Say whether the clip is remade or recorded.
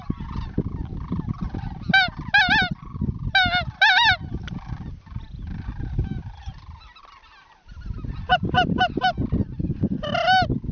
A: recorded